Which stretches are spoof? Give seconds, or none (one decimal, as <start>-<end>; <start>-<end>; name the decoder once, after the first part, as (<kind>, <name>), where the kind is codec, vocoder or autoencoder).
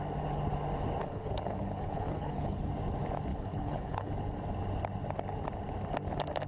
1.0-2.6 (codec, HILCodec); 3.3-4.1